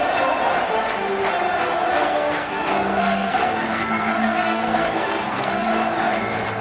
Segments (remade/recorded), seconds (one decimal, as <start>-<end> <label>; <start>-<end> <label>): 0.0-2.0 recorded; 2.0-5.7 remade; 5.7-6.6 recorded